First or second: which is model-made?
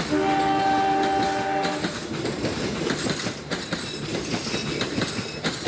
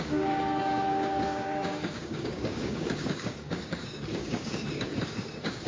second